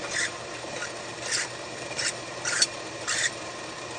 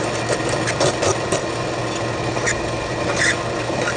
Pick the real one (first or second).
second